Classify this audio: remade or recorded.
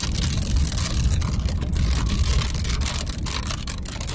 recorded